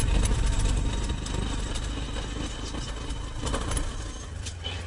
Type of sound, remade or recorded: recorded